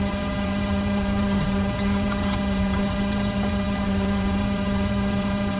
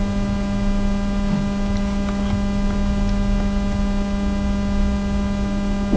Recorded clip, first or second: second